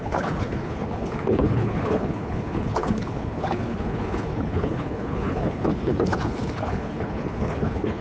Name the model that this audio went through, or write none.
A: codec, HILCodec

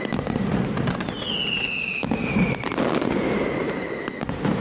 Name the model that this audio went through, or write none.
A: none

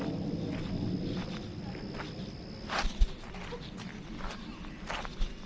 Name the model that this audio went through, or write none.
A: none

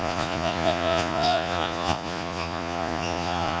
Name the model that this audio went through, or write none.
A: vocoder, Vocos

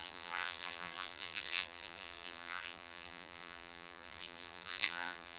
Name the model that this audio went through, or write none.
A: vocoder, BigVGAN v2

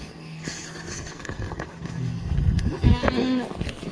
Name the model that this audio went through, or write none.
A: codec, SNAC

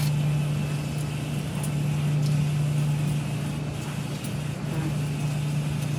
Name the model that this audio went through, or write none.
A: none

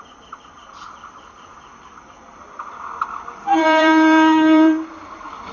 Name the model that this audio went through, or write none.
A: vocoder, BigVGAN v2